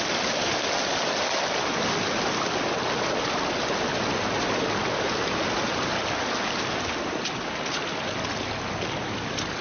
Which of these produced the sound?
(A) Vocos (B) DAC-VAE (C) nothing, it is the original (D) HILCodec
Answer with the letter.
C